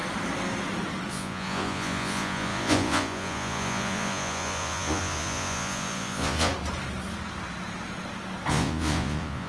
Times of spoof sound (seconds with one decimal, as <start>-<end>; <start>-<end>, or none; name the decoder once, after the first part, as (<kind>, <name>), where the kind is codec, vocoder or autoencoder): 1.1-6.5 (vocoder, Vocos); 8.5-9.5